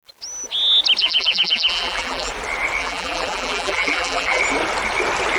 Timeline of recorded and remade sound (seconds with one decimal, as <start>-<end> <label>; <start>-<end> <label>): 0.0-1.0 recorded; 1.0-2.3 remade; 2.3-2.8 recorded; 2.8-4.4 remade; 4.4-5.4 recorded

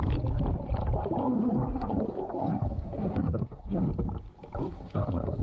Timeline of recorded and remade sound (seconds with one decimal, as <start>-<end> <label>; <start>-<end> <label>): 0.0-1.2 recorded; 1.2-3.8 remade; 3.8-4.6 recorded; 4.6-5.4 remade